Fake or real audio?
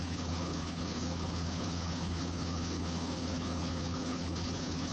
fake